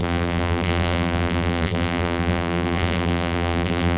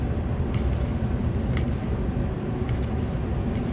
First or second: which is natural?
second